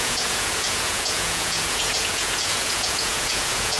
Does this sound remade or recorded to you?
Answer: remade